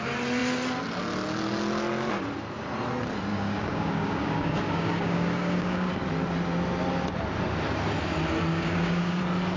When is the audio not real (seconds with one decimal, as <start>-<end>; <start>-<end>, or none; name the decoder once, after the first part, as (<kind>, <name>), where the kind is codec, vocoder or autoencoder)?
3.3-5.9 (codec, DAC); 8.5-9.2